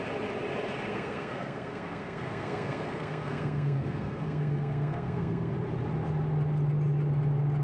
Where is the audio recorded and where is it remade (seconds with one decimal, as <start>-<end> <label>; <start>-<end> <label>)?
0.0-0.9 recorded; 0.9-5.5 remade; 5.5-7.6 recorded